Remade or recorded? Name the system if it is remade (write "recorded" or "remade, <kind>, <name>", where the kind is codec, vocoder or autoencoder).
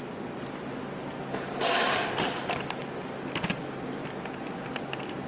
recorded